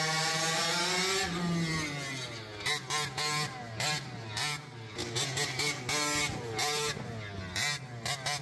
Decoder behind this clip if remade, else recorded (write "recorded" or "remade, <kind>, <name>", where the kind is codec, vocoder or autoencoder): recorded